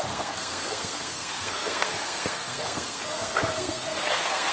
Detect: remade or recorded remade